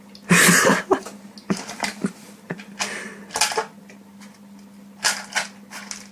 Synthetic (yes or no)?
no